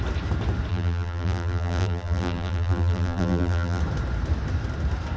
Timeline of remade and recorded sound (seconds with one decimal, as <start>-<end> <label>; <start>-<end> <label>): 0.0-0.7 recorded; 0.7-3.8 remade; 3.8-5.2 recorded